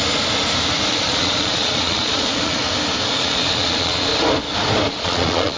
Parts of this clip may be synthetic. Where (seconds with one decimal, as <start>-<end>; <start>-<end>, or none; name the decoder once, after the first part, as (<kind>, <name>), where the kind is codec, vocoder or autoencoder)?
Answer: 0.9-2.6 (vocoder, Vocos); 3.1-4.1; 4.9-5.6